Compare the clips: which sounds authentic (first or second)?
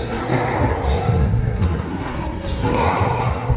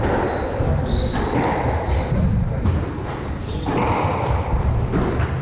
second